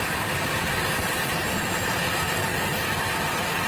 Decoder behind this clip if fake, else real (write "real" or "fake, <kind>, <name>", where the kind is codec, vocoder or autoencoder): fake, vocoder, BigVGAN v2